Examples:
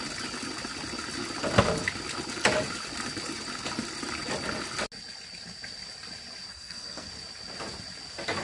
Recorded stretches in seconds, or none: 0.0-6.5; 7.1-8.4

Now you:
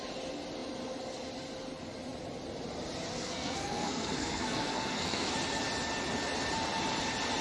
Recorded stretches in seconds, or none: 0.0-3.1; 5.3-7.4

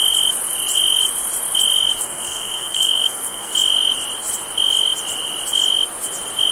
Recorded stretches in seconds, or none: 0.0-2.0; 3.5-6.5

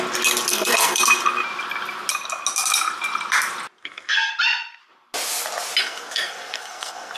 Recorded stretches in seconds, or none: 0.0-0.5; 1.0-3.8; 4.3-5.8

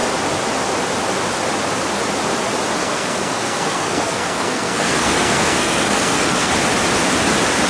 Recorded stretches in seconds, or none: 0.0-2.8; 6.5-7.7

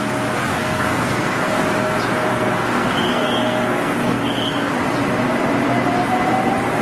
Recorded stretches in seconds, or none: 0.0-0.5; 1.6-2.3; 4.7-6.8

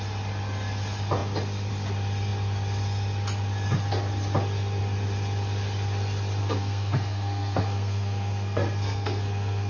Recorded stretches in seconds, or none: 0.0-6.4

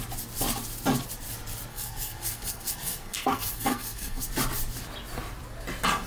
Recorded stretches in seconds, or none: 0.0-1.7; 4.3-6.1